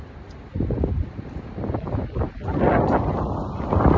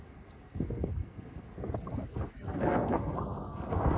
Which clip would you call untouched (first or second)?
first